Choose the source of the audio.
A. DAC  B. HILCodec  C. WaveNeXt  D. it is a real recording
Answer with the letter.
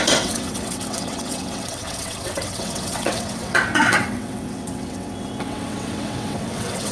C